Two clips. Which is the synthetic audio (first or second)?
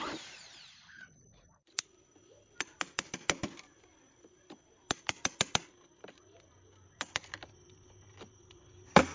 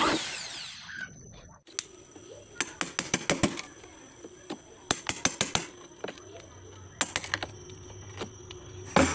first